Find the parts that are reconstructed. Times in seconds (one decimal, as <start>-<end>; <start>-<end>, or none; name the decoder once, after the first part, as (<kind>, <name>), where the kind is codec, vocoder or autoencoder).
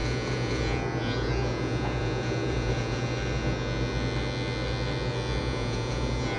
0.0-3.1 (vocoder, Vocos); 5.4-6.4